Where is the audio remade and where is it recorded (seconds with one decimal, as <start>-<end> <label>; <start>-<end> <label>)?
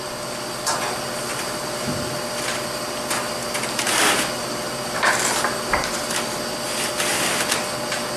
0.0-1.3 recorded; 1.3-2.1 remade; 2.1-8.2 recorded